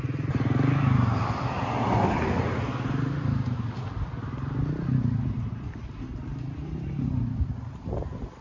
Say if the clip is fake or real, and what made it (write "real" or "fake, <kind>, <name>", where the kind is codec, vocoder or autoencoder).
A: real